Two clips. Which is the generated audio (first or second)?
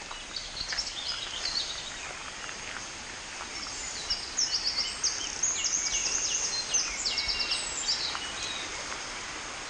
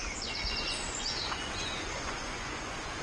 second